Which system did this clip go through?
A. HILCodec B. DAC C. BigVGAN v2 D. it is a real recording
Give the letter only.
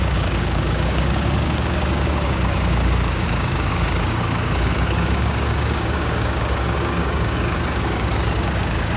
B